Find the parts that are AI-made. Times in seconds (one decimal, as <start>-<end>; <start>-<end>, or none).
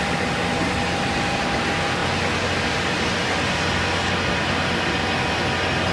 none